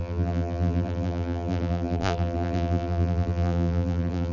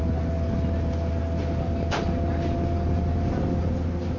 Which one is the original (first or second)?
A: second